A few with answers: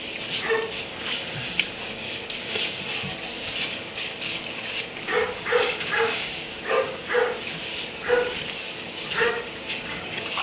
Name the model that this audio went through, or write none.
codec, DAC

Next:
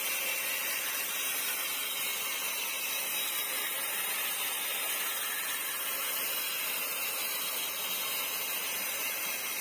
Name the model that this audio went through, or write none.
none